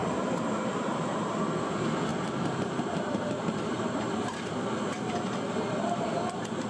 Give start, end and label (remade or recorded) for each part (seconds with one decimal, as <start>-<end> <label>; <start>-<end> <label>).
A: 0.0-0.8 remade; 0.8-2.1 recorded; 2.1-6.1 remade; 6.1-6.7 recorded